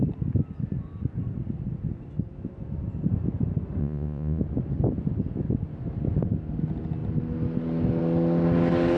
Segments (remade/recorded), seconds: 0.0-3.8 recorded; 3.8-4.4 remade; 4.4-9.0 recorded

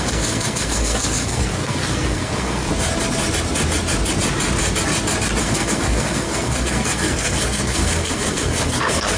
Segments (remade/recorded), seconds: 0.0-2.7 remade; 2.7-5.4 recorded; 5.4-9.2 remade

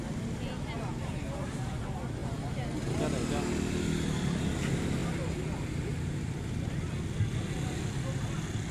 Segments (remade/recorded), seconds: 0.0-8.7 recorded

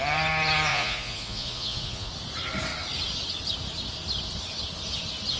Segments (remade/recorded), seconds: 0.0-0.7 recorded; 0.7-2.1 remade; 2.1-5.4 recorded

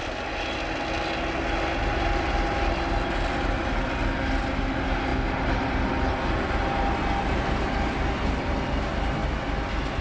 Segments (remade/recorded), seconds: 0.0-10.0 recorded

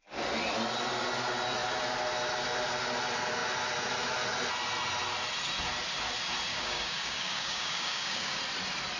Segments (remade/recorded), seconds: 0.0-6.5 recorded; 6.5-8.4 remade; 8.4-9.0 recorded

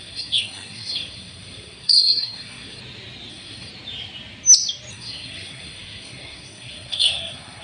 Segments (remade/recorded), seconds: 0.0-2.8 remade; 2.8-3.3 recorded; 3.3-3.7 remade; 3.7-4.9 recorded; 4.9-7.6 remade